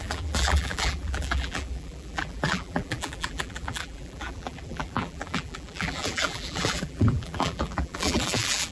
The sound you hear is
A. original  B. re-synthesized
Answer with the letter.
B